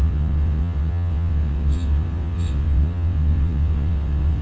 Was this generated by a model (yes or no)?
yes